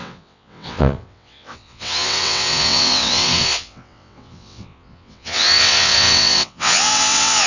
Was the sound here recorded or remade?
remade